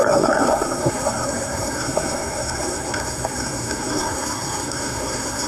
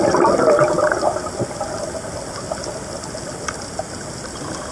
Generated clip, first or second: first